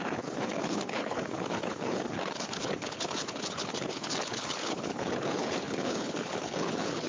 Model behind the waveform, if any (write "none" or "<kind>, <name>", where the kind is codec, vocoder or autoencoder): codec, HILCodec